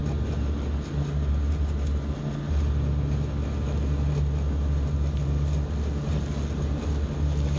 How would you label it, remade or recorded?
recorded